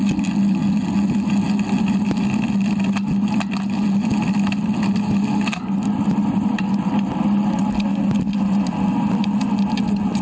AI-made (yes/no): no